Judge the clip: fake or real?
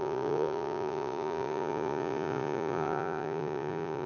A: fake